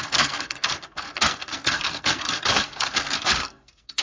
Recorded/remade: remade